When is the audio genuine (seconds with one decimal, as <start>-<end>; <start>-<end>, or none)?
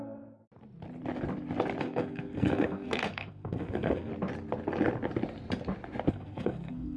0.4-1.8; 4.1-6.1